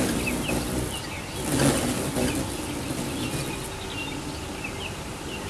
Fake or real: real